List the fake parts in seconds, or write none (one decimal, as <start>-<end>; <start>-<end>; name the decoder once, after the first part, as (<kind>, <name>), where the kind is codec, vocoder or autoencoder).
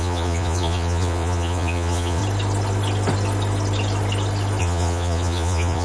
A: 0.0-2.2 (vocoder, Vocos); 4.6-5.8